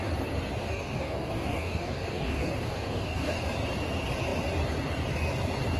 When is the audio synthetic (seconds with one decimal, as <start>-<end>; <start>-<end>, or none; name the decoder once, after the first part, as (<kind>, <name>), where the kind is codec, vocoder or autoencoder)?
0.6-3.4 (codec, DAC)